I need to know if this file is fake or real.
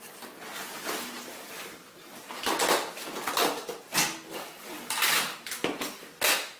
real